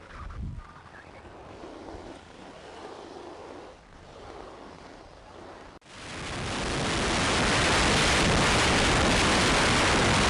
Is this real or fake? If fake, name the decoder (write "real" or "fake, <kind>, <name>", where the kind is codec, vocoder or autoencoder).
real